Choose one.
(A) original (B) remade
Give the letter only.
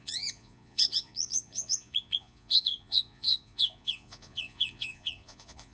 B